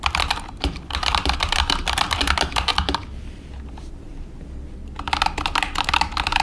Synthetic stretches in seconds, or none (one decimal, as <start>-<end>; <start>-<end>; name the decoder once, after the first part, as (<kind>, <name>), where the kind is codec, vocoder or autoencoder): 0.0-2.7 (vocoder, BigVGAN v2); 3.6-4.1; 5.4-6.4